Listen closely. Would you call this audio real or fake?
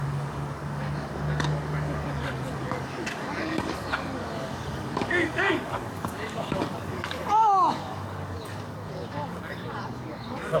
fake